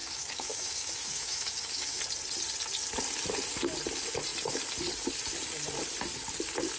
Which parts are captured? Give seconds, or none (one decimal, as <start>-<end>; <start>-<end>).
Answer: 2.0-6.8